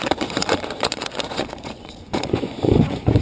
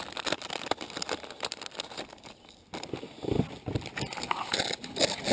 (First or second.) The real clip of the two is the second